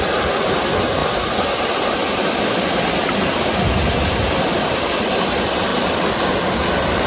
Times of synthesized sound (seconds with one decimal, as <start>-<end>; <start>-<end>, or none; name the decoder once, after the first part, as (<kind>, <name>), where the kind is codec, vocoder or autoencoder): 0.0-7.1 (vocoder, BigVGAN v2)